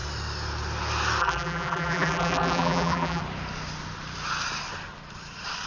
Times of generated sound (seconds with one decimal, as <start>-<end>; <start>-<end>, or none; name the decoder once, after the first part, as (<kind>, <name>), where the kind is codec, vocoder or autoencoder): 1.2-3.2 (vocoder, BigVGAN v2)